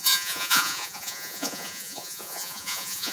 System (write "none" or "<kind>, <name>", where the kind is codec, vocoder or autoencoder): vocoder, Vocos